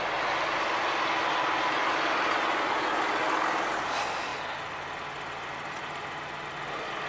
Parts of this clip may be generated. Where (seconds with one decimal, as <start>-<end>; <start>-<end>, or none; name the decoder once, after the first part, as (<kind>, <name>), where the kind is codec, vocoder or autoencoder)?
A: none